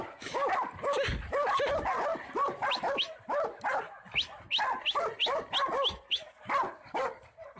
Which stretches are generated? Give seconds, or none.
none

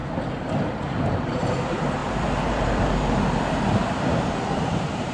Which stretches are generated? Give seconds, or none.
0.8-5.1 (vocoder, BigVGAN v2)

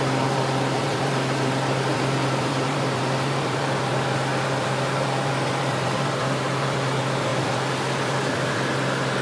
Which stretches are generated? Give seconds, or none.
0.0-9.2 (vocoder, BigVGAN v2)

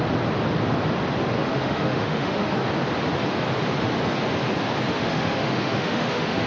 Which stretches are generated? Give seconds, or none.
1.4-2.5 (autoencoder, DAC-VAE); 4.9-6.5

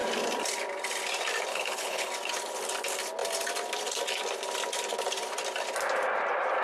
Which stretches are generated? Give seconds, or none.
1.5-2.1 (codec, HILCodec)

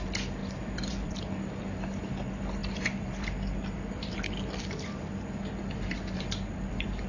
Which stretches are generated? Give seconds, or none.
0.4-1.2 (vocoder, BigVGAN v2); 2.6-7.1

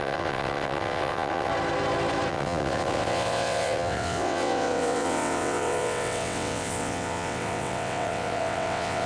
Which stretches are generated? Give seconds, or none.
0.0-1.5 (vocoder, WaveNeXt); 2.3-9.1